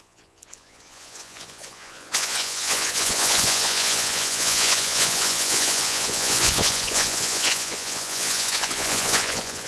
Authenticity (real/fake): fake